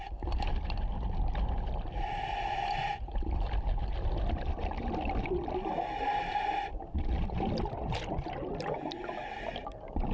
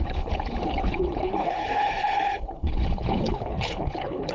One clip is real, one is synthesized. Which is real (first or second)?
first